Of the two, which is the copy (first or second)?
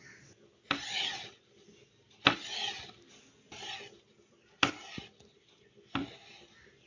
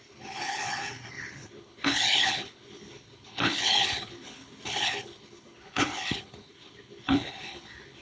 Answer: second